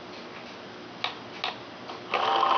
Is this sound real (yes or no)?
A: yes